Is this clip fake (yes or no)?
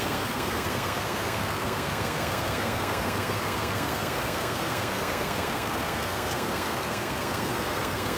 yes